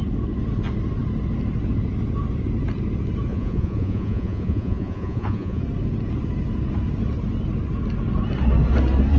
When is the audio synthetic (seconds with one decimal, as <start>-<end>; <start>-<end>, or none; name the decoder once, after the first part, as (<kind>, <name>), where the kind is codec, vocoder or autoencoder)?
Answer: 3.3-5.6 (vocoder, Vocos)